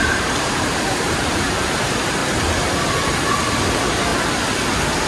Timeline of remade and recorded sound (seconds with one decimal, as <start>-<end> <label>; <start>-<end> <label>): 0.0-2.2 remade; 2.2-3.6 recorded; 3.6-4.1 remade; 4.1-5.1 recorded